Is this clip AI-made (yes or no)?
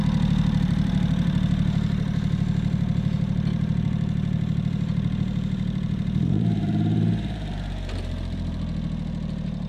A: yes